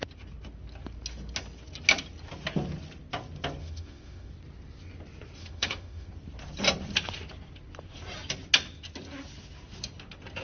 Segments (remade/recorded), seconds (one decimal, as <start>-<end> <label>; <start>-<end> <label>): 0.0-3.6 recorded; 3.6-4.3 remade; 4.3-5.4 recorded; 5.4-6.1 remade; 6.1-10.4 recorded